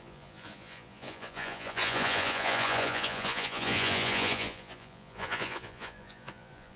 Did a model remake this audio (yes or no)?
yes